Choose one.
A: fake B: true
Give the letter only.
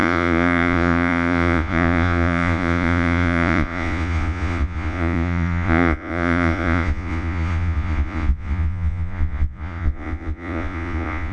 A